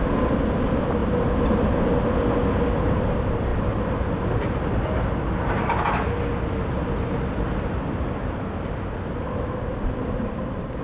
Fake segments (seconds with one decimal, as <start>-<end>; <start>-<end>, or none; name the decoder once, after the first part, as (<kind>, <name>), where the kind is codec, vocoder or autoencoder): none